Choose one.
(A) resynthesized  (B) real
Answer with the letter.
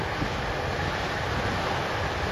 B